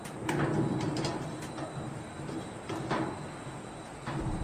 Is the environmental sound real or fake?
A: real